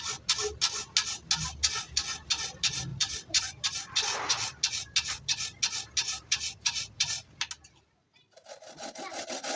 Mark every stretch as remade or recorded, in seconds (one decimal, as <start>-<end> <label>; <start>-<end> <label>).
0.0-2.9 recorded; 2.9-3.4 remade; 3.4-6.0 recorded; 6.0-7.3 remade; 7.3-9.6 recorded